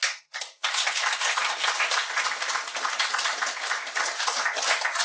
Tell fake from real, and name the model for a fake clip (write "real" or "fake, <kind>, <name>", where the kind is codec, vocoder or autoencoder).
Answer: real